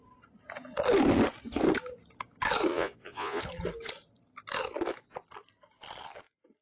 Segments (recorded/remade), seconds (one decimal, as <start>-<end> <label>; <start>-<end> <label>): 0.0-2.7 recorded; 2.7-3.4 remade; 3.4-6.6 recorded